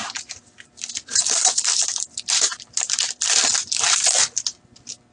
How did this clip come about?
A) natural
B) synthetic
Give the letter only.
B